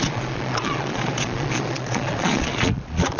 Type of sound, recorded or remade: remade